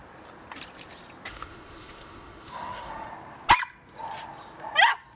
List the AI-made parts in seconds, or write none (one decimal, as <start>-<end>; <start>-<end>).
1.3-3.1